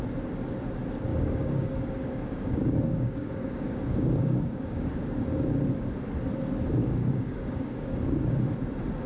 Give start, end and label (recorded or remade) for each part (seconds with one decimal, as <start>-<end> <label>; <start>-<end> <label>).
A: 0.0-1.1 recorded; 1.1-5.5 remade; 5.5-6.8 recorded; 6.8-8.3 remade; 8.3-9.1 recorded